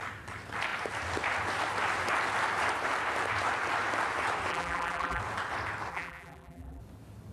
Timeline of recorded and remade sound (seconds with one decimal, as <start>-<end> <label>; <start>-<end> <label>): 0.0-4.5 recorded; 4.5-5.2 remade; 5.2-5.9 recorded; 5.9-6.8 remade; 6.8-7.3 recorded